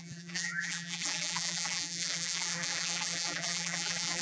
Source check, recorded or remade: remade